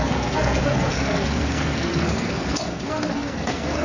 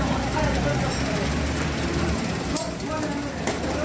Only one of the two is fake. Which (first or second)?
first